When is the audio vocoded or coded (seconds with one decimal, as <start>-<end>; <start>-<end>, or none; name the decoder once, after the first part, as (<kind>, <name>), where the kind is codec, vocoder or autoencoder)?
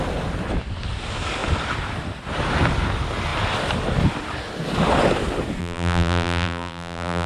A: 5.6-7.3 (vocoder, BigVGAN v2)